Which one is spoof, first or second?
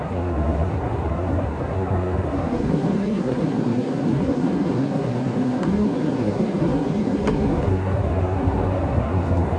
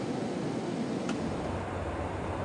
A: first